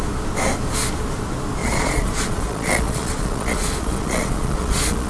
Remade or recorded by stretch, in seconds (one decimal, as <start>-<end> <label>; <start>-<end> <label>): 0.0-1.6 recorded; 1.6-5.1 remade